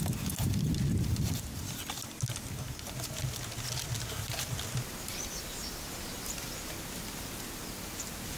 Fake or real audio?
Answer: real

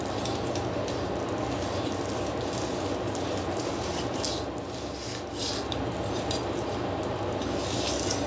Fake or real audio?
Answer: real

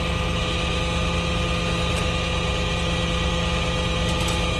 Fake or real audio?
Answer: real